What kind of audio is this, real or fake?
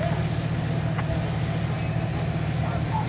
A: real